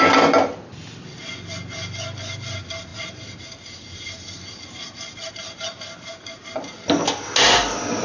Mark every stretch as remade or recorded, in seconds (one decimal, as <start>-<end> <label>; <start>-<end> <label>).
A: 0.0-0.7 recorded; 0.7-1.3 remade; 1.3-2.9 recorded; 2.9-5.3 remade; 5.3-8.0 recorded